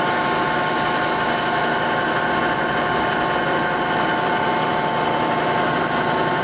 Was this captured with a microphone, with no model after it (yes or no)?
yes